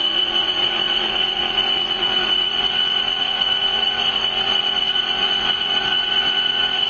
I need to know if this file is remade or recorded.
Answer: remade